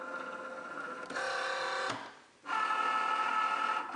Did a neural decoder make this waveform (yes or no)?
no